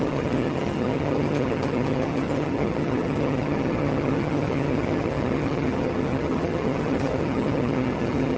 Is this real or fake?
fake